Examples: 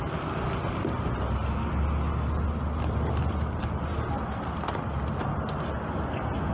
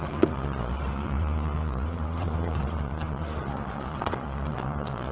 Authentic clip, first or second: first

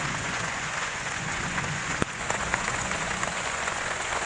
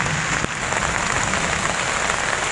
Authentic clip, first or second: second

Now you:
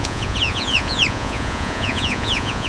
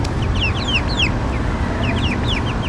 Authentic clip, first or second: second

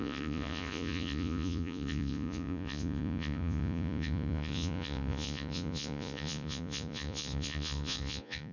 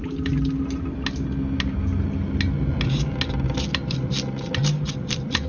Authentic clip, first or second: second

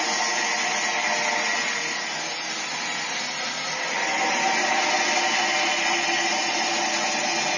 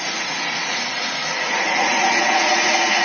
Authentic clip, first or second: first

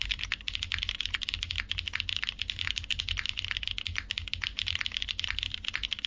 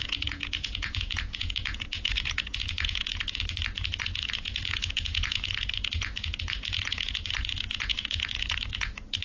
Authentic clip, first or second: first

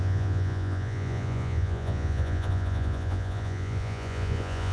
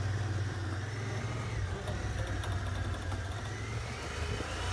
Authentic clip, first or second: second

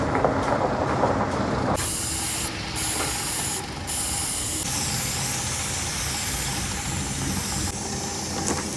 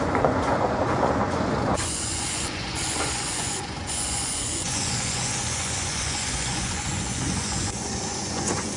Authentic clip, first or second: first